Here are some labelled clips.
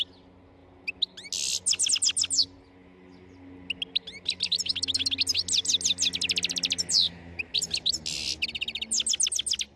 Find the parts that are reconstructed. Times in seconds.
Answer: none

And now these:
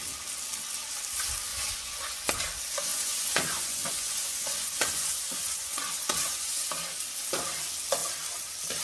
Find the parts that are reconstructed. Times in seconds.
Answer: 1.5-2.3 (vocoder, Vocos); 2.9-6.7